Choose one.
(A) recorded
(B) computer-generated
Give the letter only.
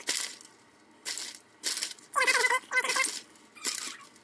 A